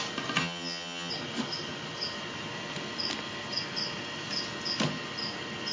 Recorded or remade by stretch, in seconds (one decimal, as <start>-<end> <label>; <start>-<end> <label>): 0.0-0.4 recorded; 0.4-1.1 remade; 1.1-5.7 recorded